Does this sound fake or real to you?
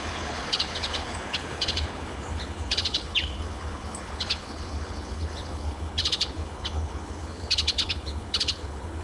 fake